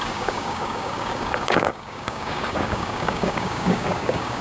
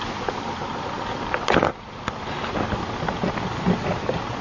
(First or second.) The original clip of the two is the second